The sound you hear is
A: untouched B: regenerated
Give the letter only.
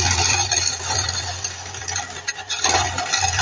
A